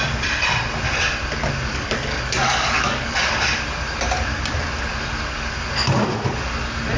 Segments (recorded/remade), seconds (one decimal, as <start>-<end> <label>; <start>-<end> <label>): 0.0-1.7 recorded; 1.7-3.3 remade; 3.3-7.0 recorded